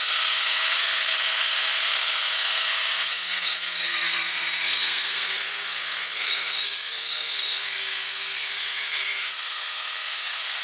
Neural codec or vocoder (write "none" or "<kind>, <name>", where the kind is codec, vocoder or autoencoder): codec, SNAC